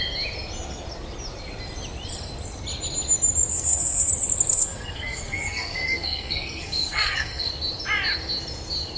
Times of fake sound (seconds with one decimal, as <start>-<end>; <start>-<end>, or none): 3.5-4.1; 4.5-7.5